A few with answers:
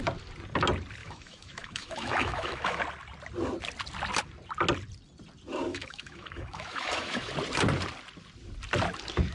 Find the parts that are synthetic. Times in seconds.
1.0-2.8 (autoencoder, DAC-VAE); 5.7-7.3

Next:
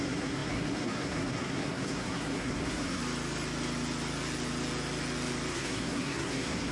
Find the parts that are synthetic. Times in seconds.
0.0-3.0 (codec, SNAC); 5.5-6.7

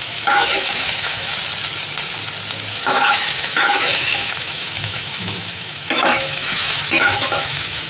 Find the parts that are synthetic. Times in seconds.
0.0-1.3 (autoencoder, DAC-VAE); 2.7-7.9

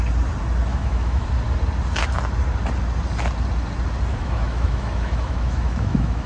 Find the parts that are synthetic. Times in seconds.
0.7-1.3 (autoencoder, DAC-VAE); 4.1-6.3

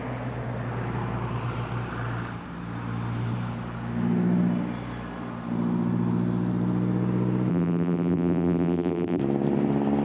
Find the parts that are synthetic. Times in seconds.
7.5-9.2 (vocoder, BigVGAN v2)

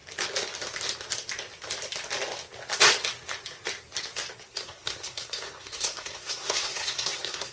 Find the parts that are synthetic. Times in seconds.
4.5-7.5 (codec, SNAC)

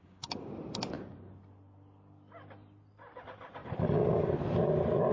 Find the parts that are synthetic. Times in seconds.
0.0-0.5 (codec, DAC)

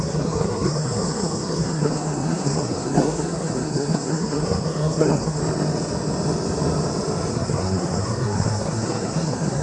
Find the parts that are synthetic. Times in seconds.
0.0-5.4 (codec, SNAC); 7.3-9.6